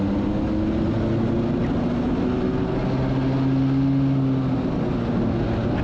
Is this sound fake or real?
real